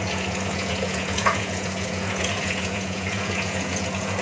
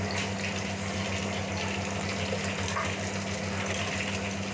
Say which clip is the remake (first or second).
first